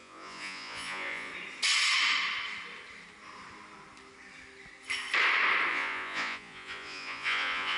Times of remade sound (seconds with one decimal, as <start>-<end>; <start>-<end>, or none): 0.0-1.3; 5.7-7.8